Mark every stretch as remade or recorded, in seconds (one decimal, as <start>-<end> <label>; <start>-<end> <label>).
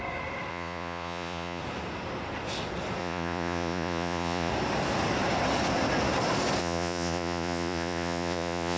0.0-0.5 recorded; 0.5-1.6 remade; 1.6-3.0 recorded; 3.0-4.5 remade; 4.5-6.6 recorded; 6.6-8.8 remade